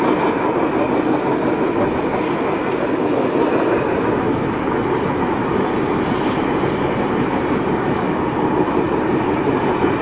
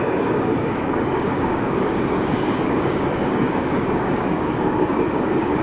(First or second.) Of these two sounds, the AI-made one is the second